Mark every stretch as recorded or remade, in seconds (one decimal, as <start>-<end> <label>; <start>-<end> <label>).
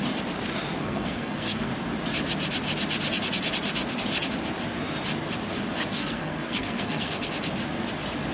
0.0-0.8 recorded; 0.8-1.7 remade; 1.7-5.9 recorded; 5.9-7.3 remade; 7.3-8.3 recorded